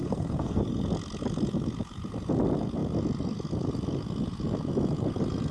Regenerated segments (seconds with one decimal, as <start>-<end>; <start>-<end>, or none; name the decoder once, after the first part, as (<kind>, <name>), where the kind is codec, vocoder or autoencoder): 0.0-0.6 (codec, SNAC)